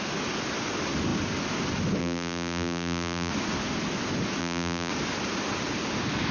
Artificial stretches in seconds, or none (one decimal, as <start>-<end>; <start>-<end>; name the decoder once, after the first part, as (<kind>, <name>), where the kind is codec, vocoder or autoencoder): 2.0-3.3 (vocoder, BigVGAN v2); 4.4-4.9